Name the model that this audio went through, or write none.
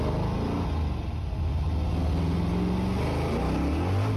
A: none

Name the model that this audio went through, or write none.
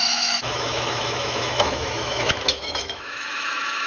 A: autoencoder, DAC-VAE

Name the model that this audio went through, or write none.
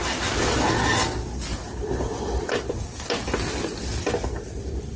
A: none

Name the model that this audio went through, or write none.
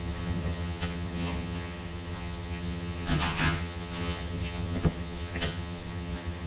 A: vocoder, HiFi-GAN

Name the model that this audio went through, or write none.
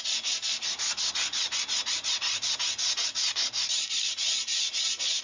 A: none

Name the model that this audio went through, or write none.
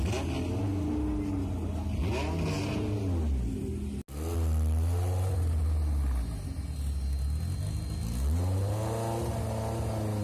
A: none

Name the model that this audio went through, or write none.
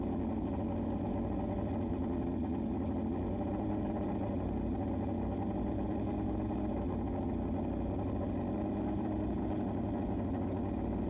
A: none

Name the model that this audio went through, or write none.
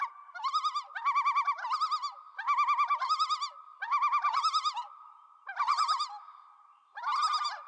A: none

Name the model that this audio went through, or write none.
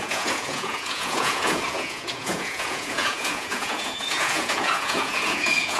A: vocoder, Vocos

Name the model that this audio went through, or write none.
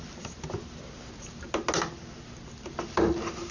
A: none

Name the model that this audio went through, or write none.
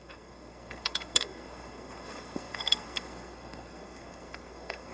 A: codec, SNAC